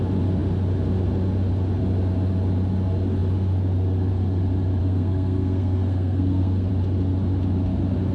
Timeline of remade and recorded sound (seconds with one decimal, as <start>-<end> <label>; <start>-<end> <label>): 0.0-4.8 recorded; 4.8-6.7 remade; 6.7-8.1 recorded